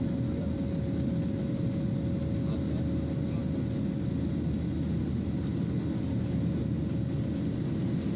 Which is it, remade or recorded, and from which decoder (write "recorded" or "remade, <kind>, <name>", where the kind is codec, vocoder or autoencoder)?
recorded